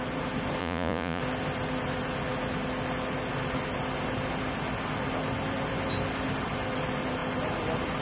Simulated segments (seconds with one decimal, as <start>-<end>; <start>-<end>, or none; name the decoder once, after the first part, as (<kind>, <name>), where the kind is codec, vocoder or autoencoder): 0.6-1.2 (vocoder, Vocos)